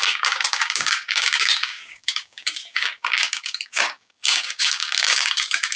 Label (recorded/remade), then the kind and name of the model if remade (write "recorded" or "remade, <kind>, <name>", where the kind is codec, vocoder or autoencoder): remade, codec, DAC